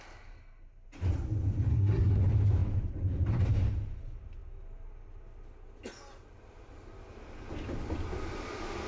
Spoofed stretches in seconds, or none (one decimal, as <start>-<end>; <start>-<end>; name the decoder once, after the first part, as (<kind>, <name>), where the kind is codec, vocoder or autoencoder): 1.7-2.2 (codec, SNAC)